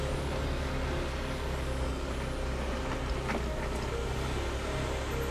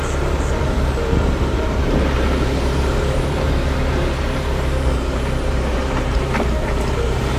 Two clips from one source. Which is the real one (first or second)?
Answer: first